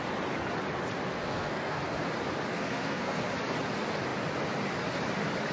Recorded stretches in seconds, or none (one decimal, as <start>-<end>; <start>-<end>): 0.0-1.1; 1.8-2.5; 3.2-5.5